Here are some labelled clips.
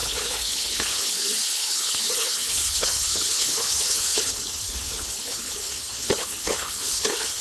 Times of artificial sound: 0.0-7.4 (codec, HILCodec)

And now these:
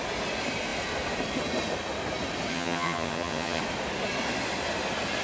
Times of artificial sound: 2.5-3.6 (vocoder, HiFi-GAN)

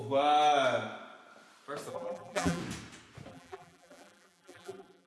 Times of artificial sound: 1.9-2.6 (vocoder, BigVGAN v2); 3.3-5.1

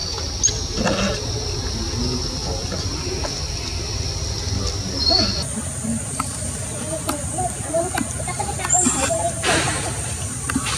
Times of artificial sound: none

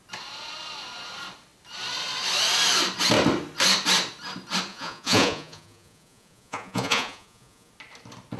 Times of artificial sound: 4.7-7.7 (vocoder, Vocos)